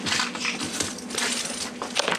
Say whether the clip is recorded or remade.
recorded